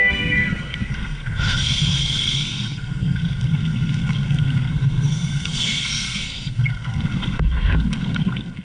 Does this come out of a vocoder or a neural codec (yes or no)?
yes